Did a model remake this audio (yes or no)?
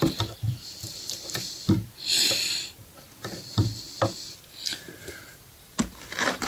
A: yes